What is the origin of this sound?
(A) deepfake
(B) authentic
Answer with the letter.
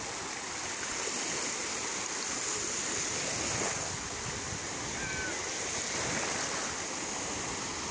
B